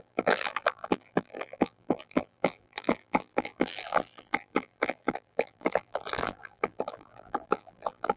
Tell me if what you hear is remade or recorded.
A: remade